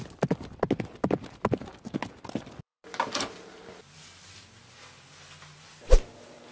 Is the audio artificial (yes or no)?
no